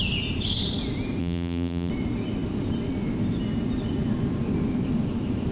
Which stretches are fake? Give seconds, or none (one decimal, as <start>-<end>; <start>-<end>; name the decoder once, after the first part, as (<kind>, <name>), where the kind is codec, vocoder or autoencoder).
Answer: 1.2-1.9 (vocoder, BigVGAN v2)